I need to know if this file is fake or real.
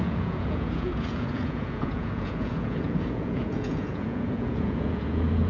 fake